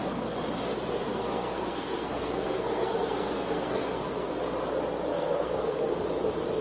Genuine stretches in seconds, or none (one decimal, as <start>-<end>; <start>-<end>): 0.0-1.1; 4.3-5.1; 5.9-6.6